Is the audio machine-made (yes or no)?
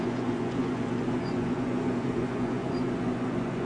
yes